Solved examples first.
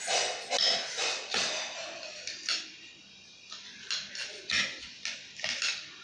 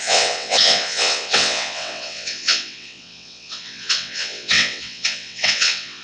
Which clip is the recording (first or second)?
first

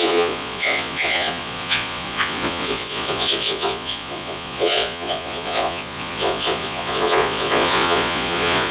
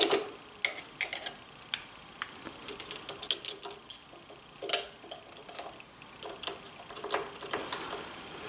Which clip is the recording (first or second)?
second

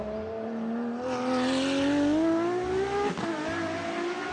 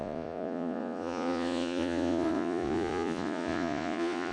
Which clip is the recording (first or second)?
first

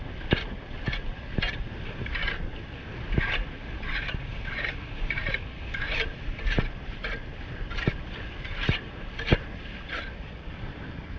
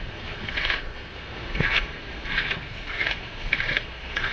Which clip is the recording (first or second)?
first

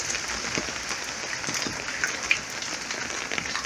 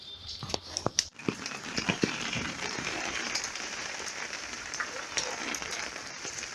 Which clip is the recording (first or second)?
first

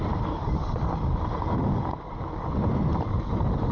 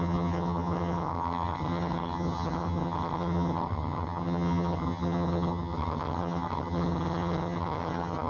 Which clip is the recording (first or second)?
first